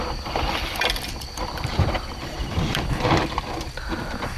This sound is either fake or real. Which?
fake